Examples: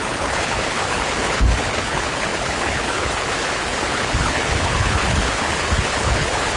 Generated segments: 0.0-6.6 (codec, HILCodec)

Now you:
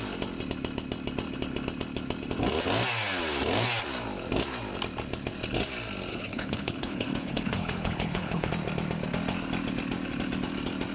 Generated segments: 6.1-8.5 (codec, HILCodec)

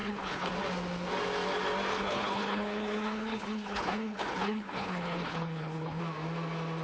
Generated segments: 0.0-0.5 (codec, HILCodec); 1.9-6.0